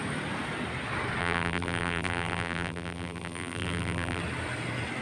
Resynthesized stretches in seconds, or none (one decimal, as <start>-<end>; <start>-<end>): 1.2-4.2